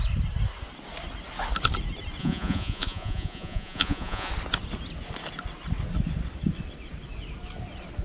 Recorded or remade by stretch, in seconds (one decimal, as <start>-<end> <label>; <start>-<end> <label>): 0.0-2.2 recorded; 2.2-4.3 remade; 4.3-8.0 recorded